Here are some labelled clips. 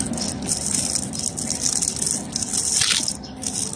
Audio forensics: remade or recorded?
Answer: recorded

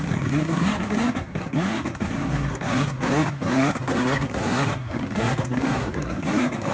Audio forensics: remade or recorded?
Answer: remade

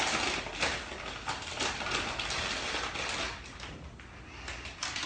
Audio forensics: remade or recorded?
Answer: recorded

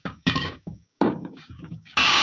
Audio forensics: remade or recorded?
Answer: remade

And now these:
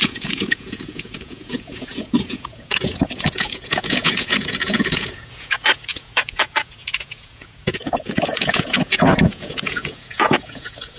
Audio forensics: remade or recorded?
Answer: remade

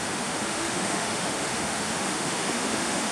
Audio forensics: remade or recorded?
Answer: remade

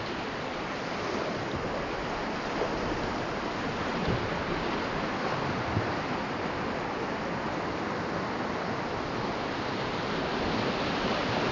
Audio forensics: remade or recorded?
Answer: recorded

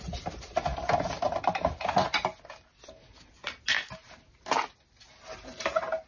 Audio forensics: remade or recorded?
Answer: recorded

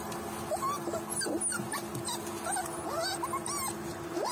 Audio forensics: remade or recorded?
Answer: recorded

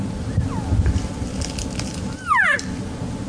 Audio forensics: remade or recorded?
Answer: recorded